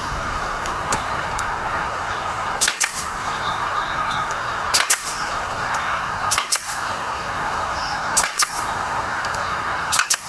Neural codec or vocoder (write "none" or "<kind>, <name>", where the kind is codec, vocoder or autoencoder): codec, SNAC